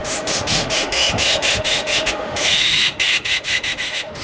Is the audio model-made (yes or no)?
yes